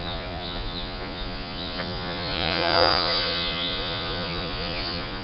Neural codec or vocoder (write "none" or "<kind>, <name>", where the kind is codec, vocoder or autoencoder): vocoder, Vocos